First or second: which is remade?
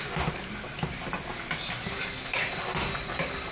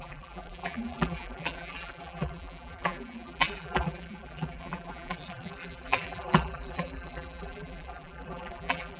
second